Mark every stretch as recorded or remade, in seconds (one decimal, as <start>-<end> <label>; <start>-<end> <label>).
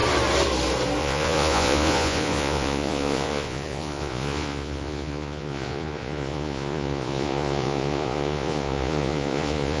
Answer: 0.0-1.0 recorded; 1.0-9.8 remade